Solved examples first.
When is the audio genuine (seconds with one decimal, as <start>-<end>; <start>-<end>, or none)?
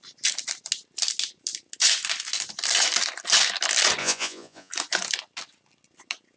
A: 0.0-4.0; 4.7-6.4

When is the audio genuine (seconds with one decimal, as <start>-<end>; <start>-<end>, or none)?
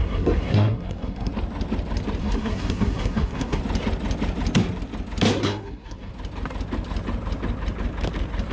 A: 1.3-2.2; 3.6-5.3; 6.1-8.5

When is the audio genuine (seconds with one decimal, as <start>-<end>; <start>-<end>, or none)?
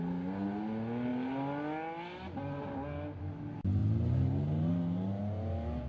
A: 0.0-5.9